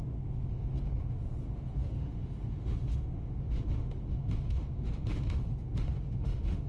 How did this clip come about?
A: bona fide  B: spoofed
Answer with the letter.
B